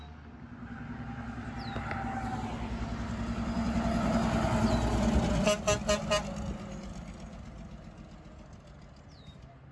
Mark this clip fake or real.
real